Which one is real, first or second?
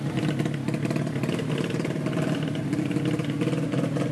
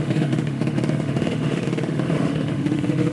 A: first